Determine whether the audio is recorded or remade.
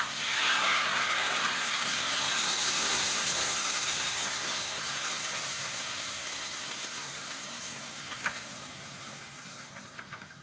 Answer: remade